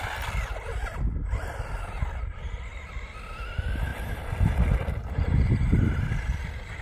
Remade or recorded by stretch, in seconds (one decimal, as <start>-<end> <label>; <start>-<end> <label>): 0.0-6.8 recorded